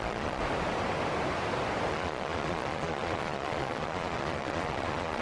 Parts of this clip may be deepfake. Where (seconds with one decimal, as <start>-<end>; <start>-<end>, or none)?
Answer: 0.0-0.4; 1.9-5.2